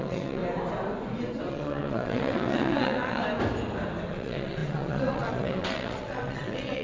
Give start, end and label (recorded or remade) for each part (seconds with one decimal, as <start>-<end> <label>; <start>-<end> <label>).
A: 0.0-0.4 remade; 0.4-1.5 recorded; 1.5-3.2 remade; 3.2-4.1 recorded; 4.1-6.8 remade